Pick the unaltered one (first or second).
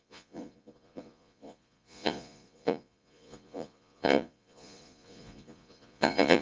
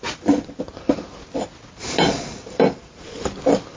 second